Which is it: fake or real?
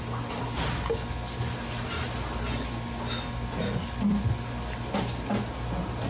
real